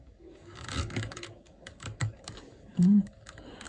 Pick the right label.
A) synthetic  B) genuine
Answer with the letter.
A